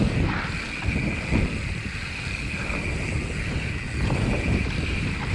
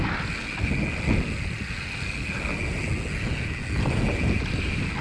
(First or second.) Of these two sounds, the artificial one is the first